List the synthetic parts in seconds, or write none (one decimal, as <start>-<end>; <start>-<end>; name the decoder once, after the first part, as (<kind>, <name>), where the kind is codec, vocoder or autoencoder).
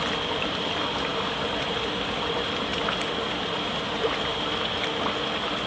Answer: none